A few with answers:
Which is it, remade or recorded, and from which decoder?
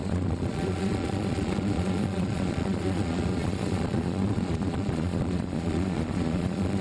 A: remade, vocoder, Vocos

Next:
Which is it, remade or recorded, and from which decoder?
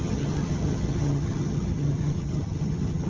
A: remade, vocoder, HiFi-GAN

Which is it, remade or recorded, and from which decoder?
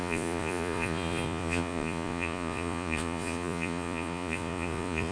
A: remade, vocoder, Vocos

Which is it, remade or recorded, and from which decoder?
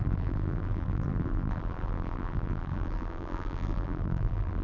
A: remade, vocoder, BigVGAN v2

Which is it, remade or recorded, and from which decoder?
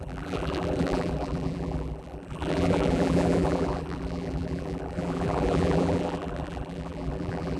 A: remade, vocoder, BigVGAN v2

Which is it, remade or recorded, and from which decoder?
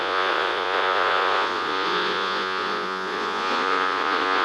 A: remade, vocoder, Vocos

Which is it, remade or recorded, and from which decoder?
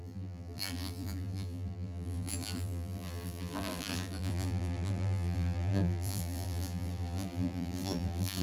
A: remade, vocoder, BigVGAN v2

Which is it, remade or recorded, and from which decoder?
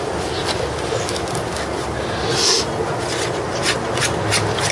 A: recorded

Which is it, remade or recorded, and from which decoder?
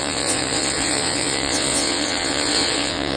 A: remade, vocoder, WaveNeXt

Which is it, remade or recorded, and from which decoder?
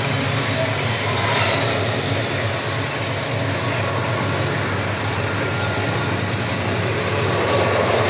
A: recorded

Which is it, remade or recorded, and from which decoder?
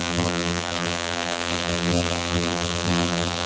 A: remade, vocoder, BigVGAN v2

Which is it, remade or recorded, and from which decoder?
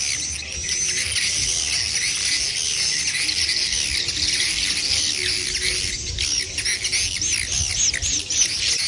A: recorded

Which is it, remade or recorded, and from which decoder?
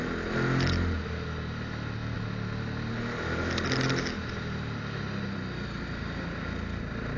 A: recorded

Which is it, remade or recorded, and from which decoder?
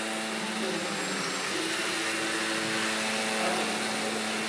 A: recorded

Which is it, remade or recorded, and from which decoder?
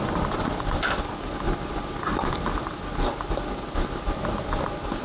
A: recorded